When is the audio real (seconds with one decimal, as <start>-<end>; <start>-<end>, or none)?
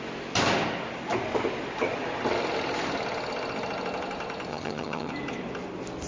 0.0-4.5; 5.1-6.1